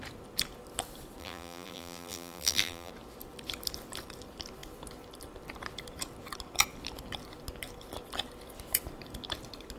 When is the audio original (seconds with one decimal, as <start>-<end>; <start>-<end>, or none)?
0.0-1.2; 2.9-9.8